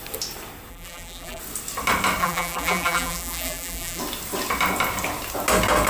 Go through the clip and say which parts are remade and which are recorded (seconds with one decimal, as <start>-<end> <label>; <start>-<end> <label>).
0.0-0.7 recorded; 0.7-1.4 remade; 1.4-2.2 recorded; 2.2-4.0 remade; 4.0-5.9 recorded